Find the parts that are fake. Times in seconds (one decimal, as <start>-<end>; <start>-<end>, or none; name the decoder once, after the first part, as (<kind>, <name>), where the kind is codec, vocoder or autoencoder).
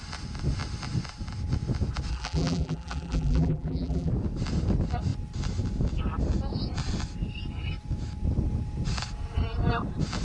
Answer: 2.1-4.1 (vocoder, BigVGAN v2)